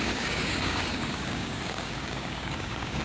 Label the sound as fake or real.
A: fake